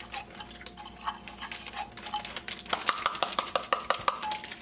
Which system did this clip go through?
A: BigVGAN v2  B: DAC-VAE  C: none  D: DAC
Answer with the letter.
C